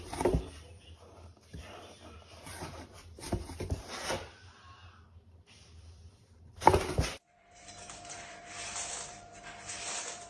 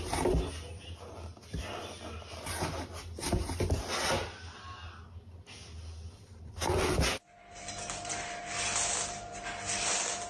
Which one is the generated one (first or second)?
first